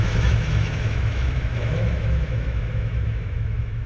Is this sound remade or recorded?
remade